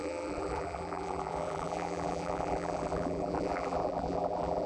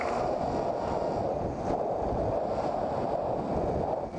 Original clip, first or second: second